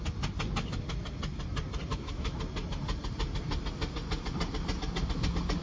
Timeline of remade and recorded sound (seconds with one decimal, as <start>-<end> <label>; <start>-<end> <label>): 0.0-1.9 recorded; 1.9-2.4 remade; 2.4-5.6 recorded